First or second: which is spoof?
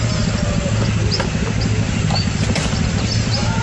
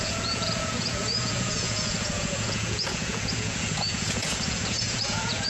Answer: second